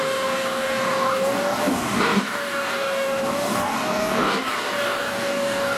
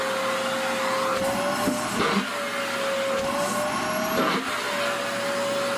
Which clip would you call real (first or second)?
second